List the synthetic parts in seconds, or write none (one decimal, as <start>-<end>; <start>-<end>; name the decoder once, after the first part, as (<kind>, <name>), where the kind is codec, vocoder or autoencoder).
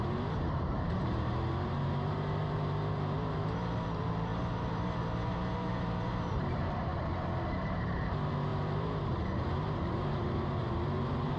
0.0-6.9 (vocoder, BigVGAN v2); 7.5-11.4